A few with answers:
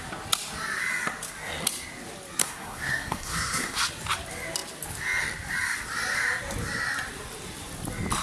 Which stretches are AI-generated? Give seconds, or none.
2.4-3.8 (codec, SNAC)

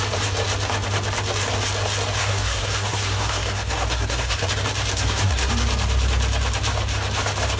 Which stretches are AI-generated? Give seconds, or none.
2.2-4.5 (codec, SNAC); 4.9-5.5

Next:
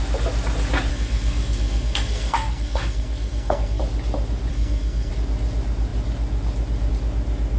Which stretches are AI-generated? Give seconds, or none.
0.9-3.8 (codec, SNAC); 4.5-5.1